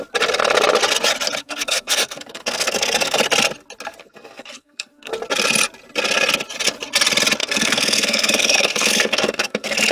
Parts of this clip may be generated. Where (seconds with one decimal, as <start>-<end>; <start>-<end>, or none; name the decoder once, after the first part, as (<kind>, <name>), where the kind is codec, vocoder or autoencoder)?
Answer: 1.4-3.2 (codec, SNAC); 4.0-5.1; 7.4-9.9